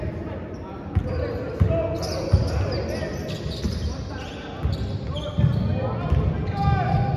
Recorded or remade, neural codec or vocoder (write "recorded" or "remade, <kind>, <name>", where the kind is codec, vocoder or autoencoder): recorded